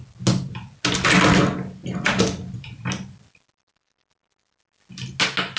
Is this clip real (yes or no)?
yes